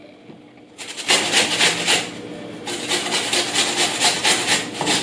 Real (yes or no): yes